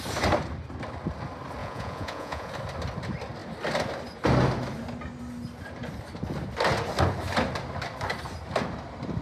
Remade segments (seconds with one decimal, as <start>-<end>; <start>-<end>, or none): 1.6-2.5